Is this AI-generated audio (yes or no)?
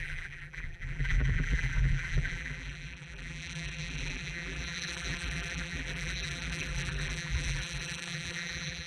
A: yes